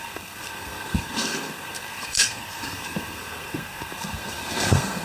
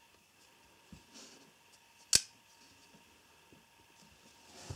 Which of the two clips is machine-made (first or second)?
first